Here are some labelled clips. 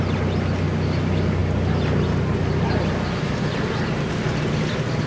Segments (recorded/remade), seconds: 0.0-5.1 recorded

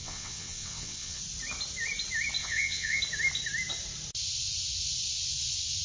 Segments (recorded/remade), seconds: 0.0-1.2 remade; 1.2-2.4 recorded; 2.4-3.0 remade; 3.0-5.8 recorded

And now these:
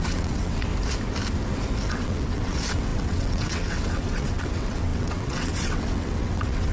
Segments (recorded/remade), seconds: 0.0-0.7 remade; 0.7-1.9 recorded; 1.9-6.7 remade

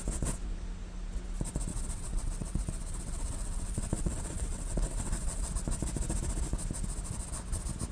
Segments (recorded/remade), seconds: 0.0-1.7 recorded; 1.7-5.5 remade; 5.5-7.9 recorded

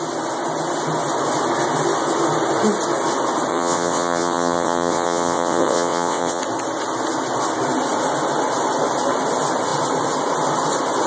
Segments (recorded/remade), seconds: 0.0-3.5 recorded; 3.5-6.4 remade; 6.4-11.1 recorded